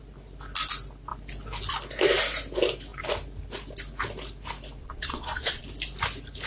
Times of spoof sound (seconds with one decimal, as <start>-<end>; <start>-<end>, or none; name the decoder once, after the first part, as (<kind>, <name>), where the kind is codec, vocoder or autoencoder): 4.8-5.6 (vocoder, Vocos)